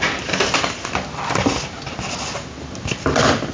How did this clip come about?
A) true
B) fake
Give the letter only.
A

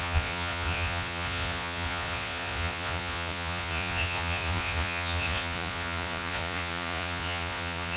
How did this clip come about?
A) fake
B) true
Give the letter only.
A